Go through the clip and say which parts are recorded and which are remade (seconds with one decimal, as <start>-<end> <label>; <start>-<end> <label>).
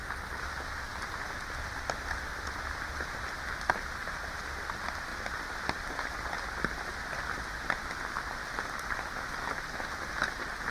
0.0-10.7 recorded